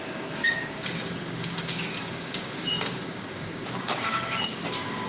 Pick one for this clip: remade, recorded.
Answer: remade